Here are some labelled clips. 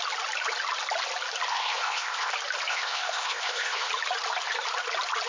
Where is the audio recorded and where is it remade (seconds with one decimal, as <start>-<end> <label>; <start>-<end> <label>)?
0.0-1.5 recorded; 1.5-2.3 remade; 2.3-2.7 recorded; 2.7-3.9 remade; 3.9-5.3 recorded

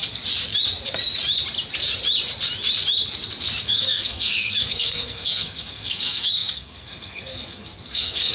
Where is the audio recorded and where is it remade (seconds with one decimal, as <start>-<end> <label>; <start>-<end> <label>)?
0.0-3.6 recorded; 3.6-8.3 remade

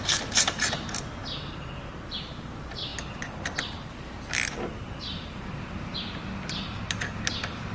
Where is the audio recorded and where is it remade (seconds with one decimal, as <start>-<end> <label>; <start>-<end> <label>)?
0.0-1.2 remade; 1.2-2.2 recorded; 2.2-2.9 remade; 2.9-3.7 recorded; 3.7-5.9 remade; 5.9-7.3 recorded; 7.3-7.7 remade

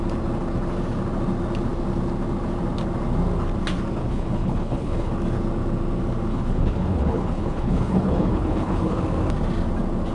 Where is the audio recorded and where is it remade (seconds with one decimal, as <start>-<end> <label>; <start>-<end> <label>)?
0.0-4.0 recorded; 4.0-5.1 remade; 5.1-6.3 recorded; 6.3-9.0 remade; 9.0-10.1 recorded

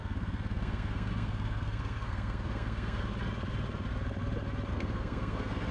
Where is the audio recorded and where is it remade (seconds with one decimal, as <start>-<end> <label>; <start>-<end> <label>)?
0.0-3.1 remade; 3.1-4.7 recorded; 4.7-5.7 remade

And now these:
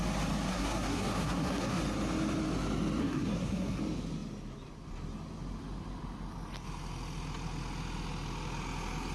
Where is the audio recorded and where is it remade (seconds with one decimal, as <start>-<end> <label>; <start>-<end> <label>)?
0.0-0.5 recorded; 0.5-1.8 remade; 1.8-3.0 recorded; 3.0-3.8 remade; 3.8-9.1 recorded

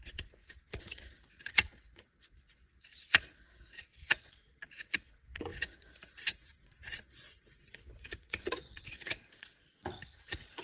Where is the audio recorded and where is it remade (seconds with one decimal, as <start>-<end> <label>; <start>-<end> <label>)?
0.0-10.6 remade